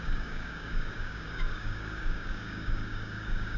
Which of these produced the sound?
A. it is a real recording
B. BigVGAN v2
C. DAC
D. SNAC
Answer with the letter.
C